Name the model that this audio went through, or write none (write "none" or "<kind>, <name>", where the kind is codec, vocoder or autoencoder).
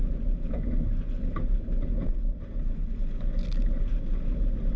none